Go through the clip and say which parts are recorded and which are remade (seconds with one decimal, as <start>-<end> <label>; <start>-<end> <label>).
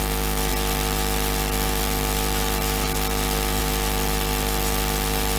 0.0-5.4 recorded